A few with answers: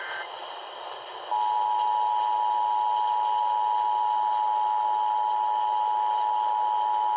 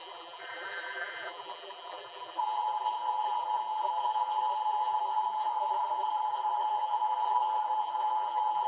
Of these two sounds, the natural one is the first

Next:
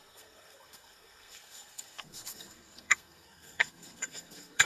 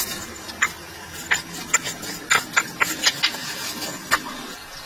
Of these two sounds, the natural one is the second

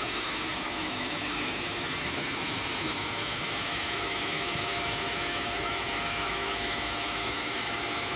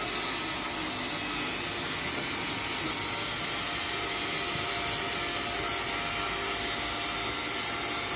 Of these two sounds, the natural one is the second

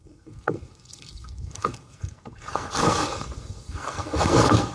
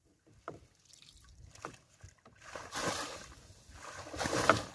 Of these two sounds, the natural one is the second